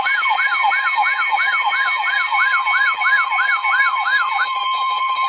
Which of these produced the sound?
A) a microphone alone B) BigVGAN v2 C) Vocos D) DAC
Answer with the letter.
B